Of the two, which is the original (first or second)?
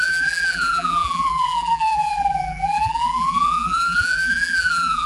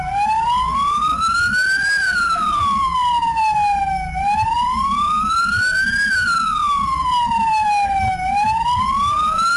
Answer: second